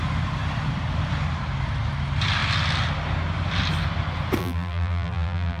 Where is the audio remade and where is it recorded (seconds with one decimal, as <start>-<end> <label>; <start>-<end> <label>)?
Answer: 0.0-4.4 recorded; 4.4-5.6 remade